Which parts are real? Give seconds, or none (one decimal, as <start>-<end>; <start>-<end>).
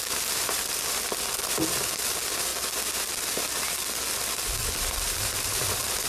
2.5-3.9